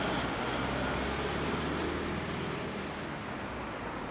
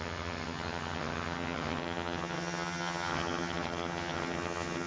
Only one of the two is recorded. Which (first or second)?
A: first